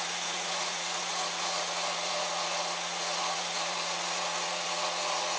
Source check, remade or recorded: remade